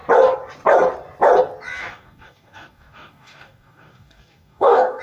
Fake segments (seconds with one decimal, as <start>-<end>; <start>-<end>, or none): 1.8-5.0